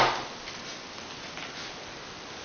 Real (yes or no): yes